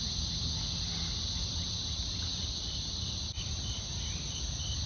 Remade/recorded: recorded